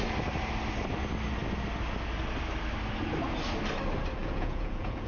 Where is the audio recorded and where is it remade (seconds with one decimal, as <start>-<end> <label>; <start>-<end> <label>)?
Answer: 0.0-4.2 recorded; 4.2-5.1 remade